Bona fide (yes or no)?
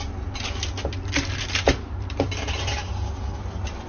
yes